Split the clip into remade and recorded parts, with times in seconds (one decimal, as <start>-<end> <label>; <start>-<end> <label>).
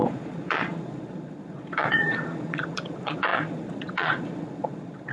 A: 0.0-5.1 remade